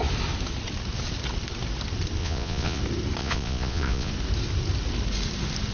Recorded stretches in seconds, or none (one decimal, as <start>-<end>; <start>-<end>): 0.0-2.2; 2.8-3.2; 4.1-5.7